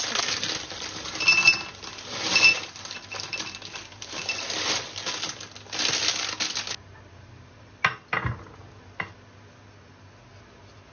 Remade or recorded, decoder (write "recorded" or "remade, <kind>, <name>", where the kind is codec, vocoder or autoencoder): recorded